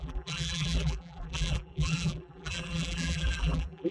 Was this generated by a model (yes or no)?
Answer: yes